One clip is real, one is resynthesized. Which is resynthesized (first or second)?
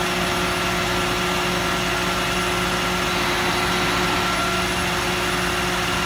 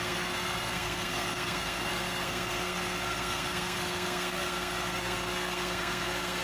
second